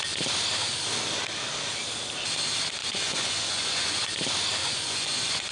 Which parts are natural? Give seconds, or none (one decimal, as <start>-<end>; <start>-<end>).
0.0-2.8; 4.1-4.6